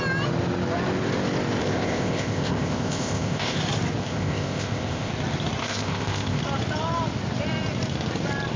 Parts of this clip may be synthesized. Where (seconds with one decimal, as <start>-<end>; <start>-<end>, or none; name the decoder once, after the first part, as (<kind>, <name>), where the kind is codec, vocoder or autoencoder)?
1.6-3.6 (codec, ZipCodec); 4.0-5.1; 5.6-6.4